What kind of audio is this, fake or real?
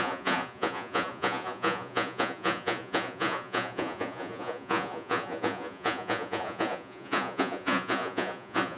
fake